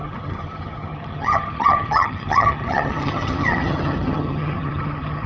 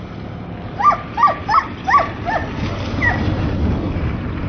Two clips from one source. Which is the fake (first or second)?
first